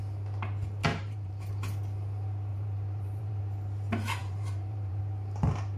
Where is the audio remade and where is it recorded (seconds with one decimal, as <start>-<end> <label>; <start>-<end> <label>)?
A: 0.0-0.9 recorded; 0.9-1.5 remade; 1.5-2.5 recorded; 2.5-3.4 remade; 3.4-4.2 recorded; 4.2-5.0 remade; 5.0-5.8 recorded